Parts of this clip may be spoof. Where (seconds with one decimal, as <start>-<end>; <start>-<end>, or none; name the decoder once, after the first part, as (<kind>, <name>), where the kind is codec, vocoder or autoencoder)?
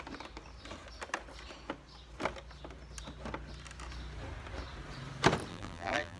5.5-6.2 (vocoder, BigVGAN v2)